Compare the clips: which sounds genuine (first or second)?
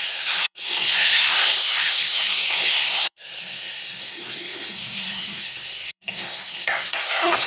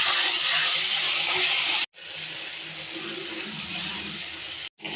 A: second